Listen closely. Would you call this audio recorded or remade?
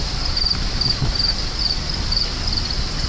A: recorded